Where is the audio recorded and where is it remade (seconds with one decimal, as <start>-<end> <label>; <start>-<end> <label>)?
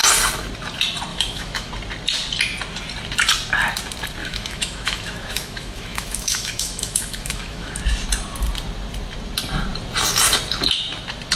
0.0-1.1 recorded; 1.1-1.7 remade; 1.7-4.2 recorded; 4.2-7.8 remade; 7.8-11.4 recorded